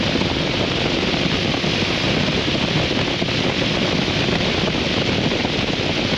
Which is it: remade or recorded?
recorded